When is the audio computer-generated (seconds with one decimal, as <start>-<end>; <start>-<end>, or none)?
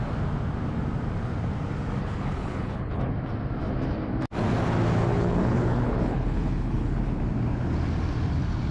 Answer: 2.0-3.0; 5.1-7.2